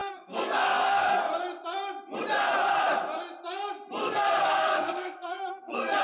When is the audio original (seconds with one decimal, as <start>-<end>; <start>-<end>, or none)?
1.2-4.0